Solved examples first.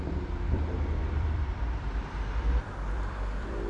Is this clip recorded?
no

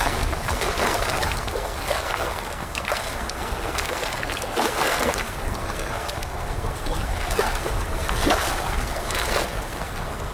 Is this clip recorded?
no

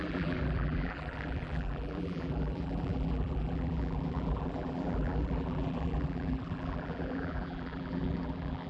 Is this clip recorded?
no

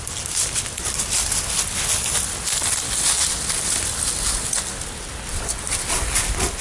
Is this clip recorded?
yes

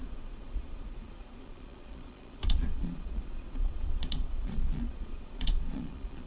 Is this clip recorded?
no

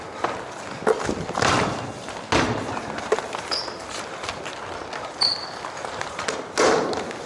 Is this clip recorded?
yes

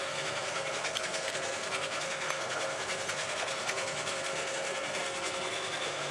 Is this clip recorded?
no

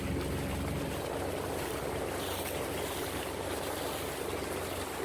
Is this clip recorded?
yes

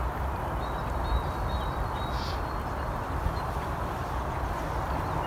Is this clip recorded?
yes